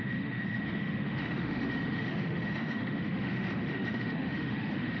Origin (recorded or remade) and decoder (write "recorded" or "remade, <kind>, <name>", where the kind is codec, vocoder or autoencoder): remade, autoencoder, DAC-VAE